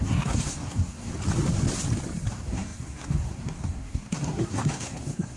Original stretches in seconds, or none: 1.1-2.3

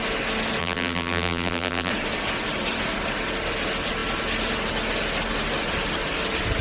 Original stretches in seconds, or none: 0.0-0.6; 1.9-6.6